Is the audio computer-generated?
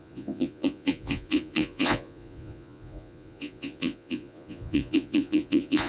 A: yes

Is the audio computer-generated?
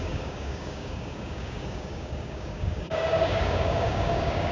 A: yes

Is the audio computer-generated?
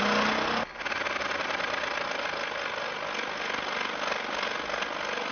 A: no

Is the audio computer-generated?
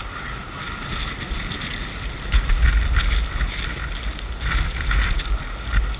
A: no